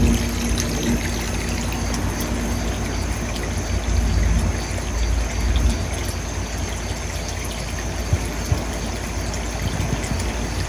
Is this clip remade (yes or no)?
no